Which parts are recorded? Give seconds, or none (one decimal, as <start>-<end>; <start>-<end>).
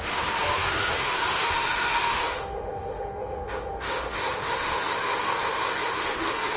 none